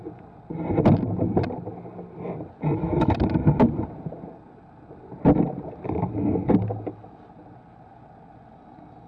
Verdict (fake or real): real